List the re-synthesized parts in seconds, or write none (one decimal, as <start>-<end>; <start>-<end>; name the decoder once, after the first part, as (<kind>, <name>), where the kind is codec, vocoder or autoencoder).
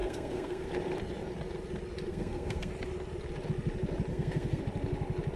0.0-0.7 (codec, SNAC); 2.1-2.7; 4.1-4.6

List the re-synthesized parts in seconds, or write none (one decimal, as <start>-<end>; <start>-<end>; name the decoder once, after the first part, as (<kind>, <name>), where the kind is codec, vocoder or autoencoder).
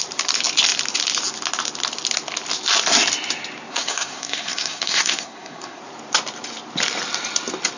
3.7-5.8 (codec, SNAC)